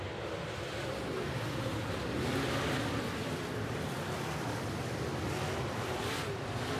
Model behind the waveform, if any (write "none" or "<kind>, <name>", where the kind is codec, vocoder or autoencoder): vocoder, BigVGAN v2